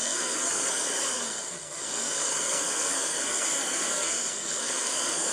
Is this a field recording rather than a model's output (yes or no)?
no